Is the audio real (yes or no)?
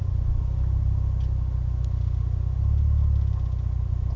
yes